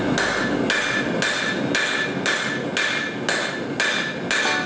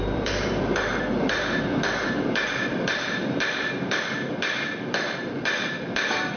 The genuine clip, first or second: first